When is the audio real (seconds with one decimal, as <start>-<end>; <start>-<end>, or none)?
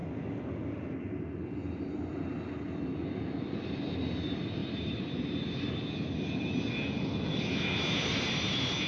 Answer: 0.0-4.6; 5.6-8.9